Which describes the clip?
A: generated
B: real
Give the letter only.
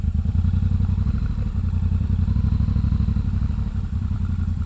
A